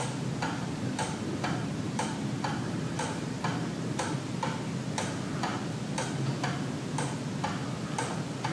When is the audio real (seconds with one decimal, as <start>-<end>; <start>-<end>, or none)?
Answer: 0.0-0.6; 4.0-8.5